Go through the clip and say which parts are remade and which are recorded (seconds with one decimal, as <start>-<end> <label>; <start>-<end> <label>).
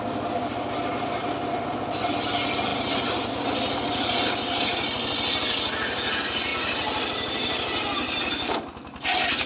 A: 0.0-9.5 recorded